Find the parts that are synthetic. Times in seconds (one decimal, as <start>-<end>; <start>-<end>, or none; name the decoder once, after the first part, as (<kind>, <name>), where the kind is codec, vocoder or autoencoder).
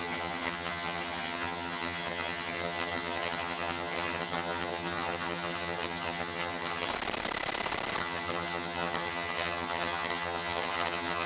0.0-6.9 (vocoder, HiFi-GAN); 8.0-11.3